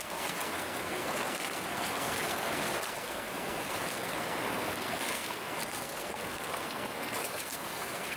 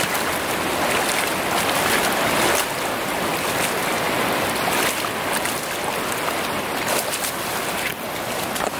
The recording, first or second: second